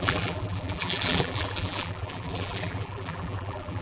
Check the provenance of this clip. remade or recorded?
remade